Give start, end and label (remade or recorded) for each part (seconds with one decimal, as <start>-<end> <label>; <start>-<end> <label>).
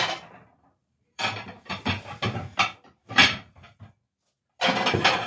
0.0-0.8 recorded; 0.8-2.1 remade; 2.1-3.0 recorded; 3.0-3.8 remade; 3.8-5.3 recorded